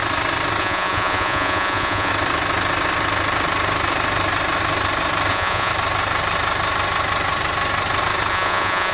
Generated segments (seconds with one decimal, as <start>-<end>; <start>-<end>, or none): 0.6-2.1; 5.3-5.7; 8.3-8.9